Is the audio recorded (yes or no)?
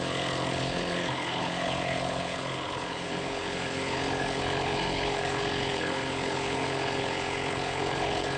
no